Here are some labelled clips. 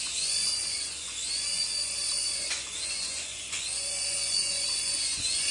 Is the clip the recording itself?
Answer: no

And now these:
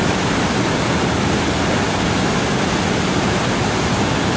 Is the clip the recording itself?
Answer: yes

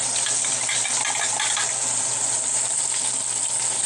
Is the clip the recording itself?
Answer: yes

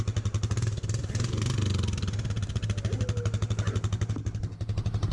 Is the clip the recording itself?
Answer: yes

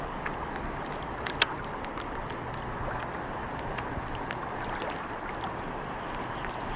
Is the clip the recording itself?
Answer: yes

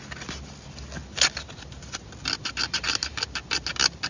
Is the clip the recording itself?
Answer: yes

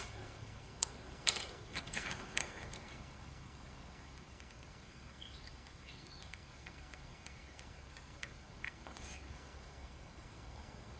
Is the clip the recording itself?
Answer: no